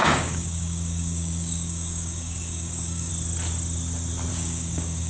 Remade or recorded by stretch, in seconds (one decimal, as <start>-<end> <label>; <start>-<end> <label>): 0.0-3.1 remade; 3.1-4.3 recorded; 4.3-5.1 remade